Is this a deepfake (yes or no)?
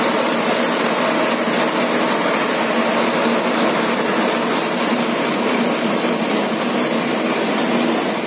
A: no